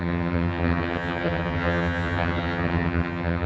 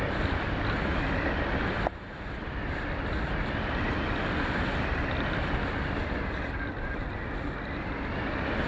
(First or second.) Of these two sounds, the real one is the second